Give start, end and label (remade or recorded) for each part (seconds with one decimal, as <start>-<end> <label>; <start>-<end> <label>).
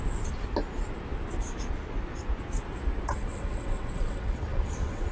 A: 0.0-3.1 recorded; 3.1-5.1 remade